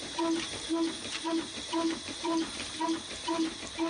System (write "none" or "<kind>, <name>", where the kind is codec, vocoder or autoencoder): vocoder, BigVGAN v2